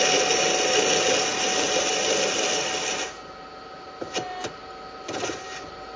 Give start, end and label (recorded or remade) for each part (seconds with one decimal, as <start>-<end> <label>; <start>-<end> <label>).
0.0-6.0 recorded